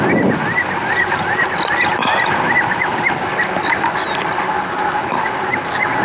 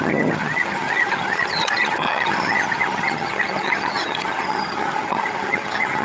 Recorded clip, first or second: first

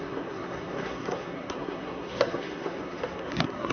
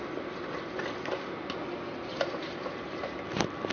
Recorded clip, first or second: second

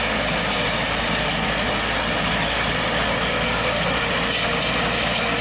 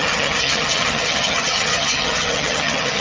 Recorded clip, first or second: first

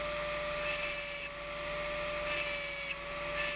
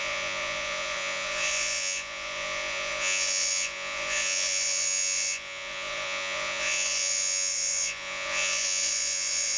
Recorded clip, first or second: first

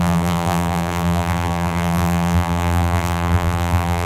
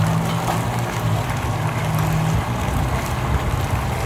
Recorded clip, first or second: second